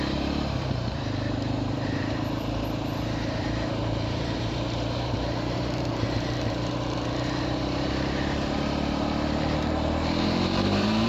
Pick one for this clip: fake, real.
fake